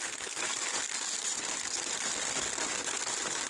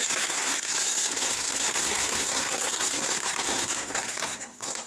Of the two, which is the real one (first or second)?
first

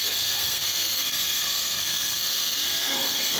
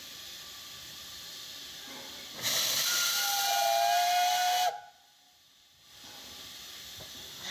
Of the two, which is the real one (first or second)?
second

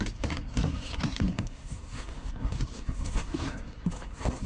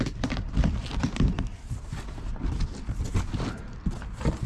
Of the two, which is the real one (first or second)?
second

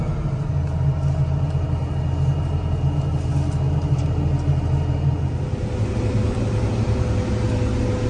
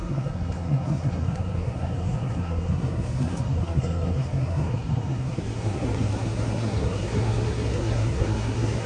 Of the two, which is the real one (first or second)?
first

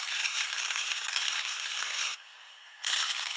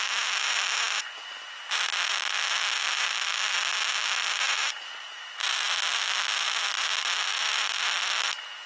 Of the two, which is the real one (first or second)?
second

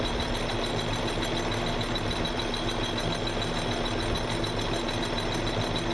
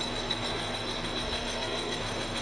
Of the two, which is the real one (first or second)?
first